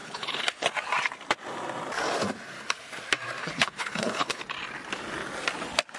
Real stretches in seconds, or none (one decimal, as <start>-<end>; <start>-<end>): 0.7-3.4; 4.4-6.0